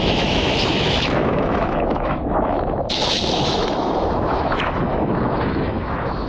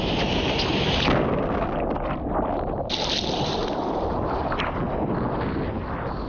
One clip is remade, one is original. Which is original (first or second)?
second